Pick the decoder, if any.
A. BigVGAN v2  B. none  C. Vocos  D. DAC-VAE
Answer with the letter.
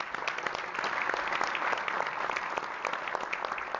B